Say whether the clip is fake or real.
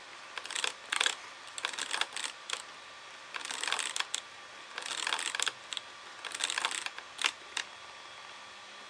real